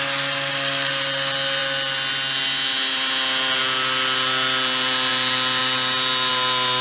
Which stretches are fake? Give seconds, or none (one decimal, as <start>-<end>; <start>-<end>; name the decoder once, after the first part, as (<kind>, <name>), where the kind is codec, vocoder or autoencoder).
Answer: none